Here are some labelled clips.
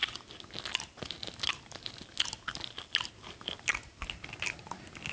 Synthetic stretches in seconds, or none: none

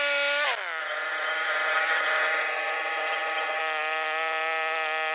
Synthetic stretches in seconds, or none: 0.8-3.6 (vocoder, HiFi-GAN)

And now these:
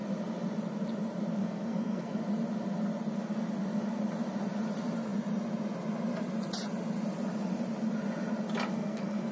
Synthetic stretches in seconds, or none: 1.4-2.2 (codec, SNAC); 8.7-9.3

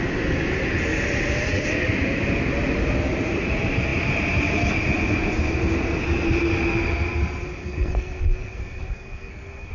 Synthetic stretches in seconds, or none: 7.6-9.7 (codec, SNAC)

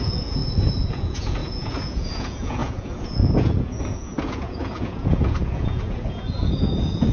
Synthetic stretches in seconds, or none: 0.0-0.4 (vocoder, Vocos); 0.9-7.1

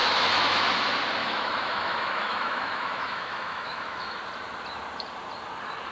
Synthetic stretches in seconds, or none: 0.0-0.7 (autoencoder, DAC-VAE); 1.2-4.2

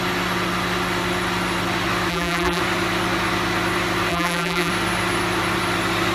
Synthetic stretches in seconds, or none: 2.1-2.6 (vocoder, BigVGAN v2); 4.1-4.7

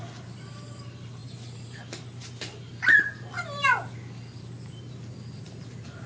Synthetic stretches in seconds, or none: none